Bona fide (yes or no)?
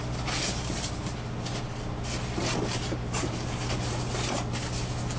yes